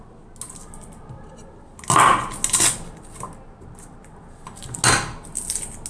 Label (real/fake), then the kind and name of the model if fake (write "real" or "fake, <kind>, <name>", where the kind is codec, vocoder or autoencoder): real